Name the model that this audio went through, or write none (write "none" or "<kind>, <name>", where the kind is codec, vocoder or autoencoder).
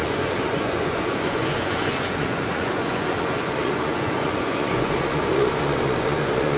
vocoder, Vocos